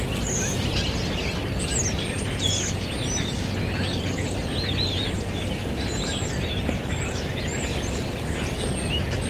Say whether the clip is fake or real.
real